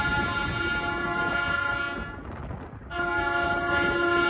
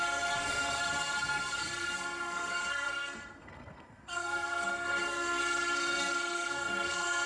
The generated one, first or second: second